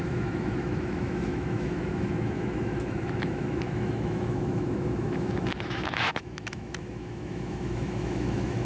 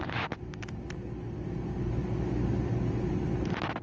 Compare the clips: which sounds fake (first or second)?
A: first